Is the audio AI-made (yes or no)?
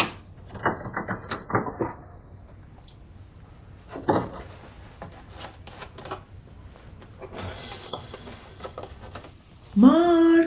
no